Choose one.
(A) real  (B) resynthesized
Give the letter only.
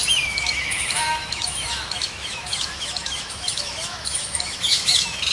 B